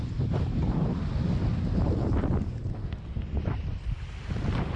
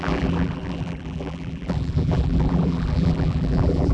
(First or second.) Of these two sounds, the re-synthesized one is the second